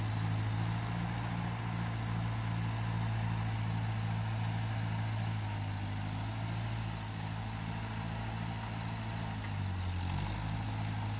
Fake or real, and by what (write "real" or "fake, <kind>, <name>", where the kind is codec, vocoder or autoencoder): real